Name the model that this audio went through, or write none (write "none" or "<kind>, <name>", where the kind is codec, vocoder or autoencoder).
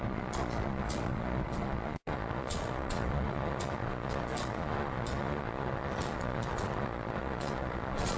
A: vocoder, Vocos